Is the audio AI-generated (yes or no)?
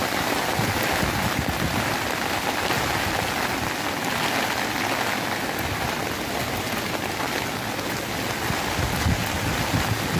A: no